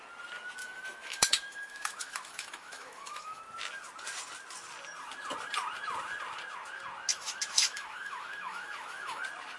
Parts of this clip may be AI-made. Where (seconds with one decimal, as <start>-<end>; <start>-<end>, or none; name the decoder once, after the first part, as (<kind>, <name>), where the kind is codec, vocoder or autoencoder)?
0.6-3.4 (autoencoder, DAC-VAE); 7.1-9.2